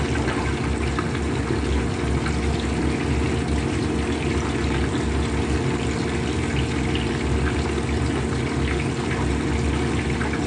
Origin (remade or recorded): recorded